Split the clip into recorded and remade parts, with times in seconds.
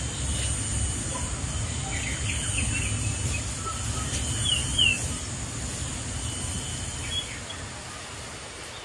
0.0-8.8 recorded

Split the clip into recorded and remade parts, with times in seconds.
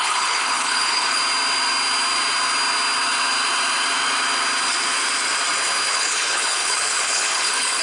0.0-1.2 remade; 1.2-5.9 recorded; 5.9-7.8 remade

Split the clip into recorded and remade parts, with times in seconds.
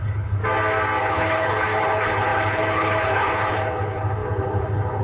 0.0-0.4 remade; 0.4-1.0 recorded; 1.0-5.0 remade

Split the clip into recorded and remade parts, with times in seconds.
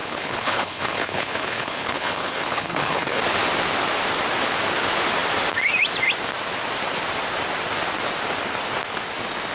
0.0-3.2 remade; 3.2-9.5 recorded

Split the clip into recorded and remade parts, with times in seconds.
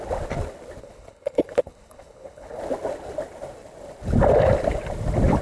0.0-0.8 recorded; 0.8-2.6 remade; 2.6-5.4 recorded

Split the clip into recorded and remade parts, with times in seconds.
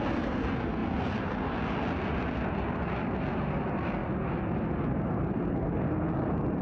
0.0-6.6 recorded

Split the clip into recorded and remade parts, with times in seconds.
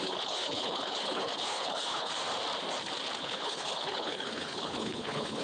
0.0-2.1 remade; 2.1-3.2 recorded; 3.2-5.4 remade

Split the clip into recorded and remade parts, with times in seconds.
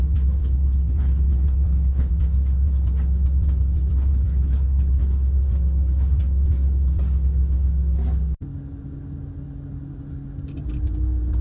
0.0-0.4 recorded; 0.4-2.1 remade; 2.1-4.1 recorded; 4.1-5.0 remade; 5.0-11.4 recorded